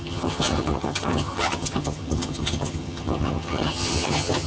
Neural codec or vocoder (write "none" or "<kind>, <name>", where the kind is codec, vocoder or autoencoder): vocoder, HiFi-GAN